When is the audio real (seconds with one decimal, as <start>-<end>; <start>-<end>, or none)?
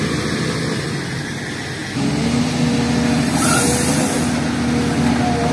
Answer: 0.0-5.5